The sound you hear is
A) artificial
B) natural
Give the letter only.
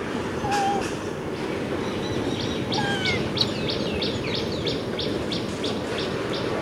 B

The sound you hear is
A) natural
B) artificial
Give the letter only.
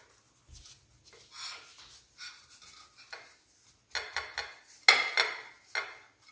A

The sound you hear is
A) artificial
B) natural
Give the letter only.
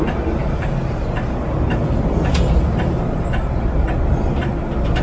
B